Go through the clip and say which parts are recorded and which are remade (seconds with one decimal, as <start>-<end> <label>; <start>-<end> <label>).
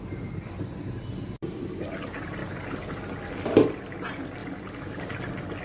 0.0-5.6 recorded